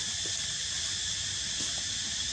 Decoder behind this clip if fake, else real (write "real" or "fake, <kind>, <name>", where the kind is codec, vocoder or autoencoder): real